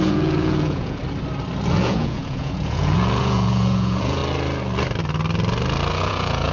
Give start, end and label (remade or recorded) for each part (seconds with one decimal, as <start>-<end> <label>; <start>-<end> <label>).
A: 0.0-1.0 remade; 1.0-1.7 recorded; 1.7-4.2 remade; 4.2-5.9 recorded; 5.9-6.5 remade